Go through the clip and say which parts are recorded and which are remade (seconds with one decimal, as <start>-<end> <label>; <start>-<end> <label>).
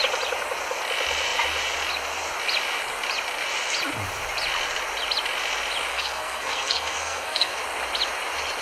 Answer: 0.0-5.9 recorded; 5.9-7.6 remade; 7.6-8.6 recorded